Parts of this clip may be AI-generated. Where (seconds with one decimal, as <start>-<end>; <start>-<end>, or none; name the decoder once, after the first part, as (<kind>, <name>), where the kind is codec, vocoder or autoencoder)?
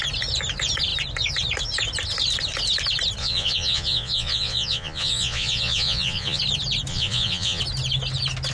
3.2-6.4 (vocoder, Vocos); 6.9-7.6